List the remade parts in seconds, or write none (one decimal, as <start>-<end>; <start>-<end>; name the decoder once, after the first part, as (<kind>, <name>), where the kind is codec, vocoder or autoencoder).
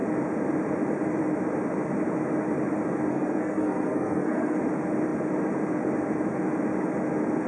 3.1-4.6 (codec, SNAC)